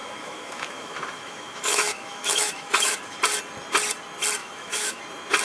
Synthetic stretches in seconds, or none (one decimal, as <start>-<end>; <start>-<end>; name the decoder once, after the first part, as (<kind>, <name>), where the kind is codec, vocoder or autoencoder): 0.0-3.2 (autoencoder, DAC-VAE); 4.4-5.0